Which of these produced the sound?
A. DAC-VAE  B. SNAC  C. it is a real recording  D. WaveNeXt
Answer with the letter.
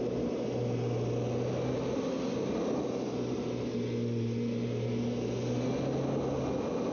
C